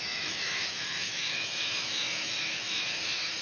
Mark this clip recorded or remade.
remade